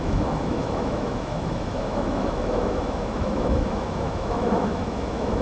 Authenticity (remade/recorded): remade